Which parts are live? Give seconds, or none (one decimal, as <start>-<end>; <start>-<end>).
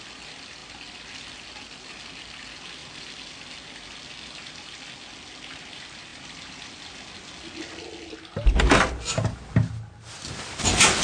0.0-11.0